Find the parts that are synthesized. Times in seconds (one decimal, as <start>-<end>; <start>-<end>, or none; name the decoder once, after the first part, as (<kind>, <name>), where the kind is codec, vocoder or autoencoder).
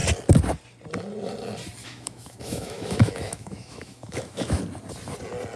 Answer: 1.8-4.6 (autoencoder, DAC-VAE)